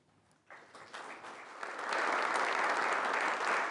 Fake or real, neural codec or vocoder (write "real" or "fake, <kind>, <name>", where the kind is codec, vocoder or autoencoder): real